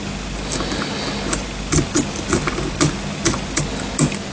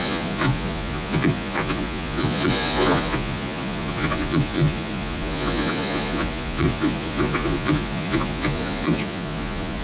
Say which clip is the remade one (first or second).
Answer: second